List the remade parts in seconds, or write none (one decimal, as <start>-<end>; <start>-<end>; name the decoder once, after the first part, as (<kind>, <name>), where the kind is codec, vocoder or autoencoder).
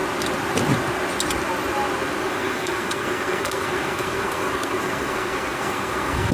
2.2-6.3 (codec, SNAC)